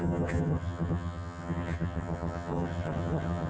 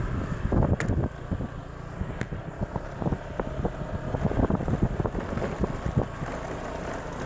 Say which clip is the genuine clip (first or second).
second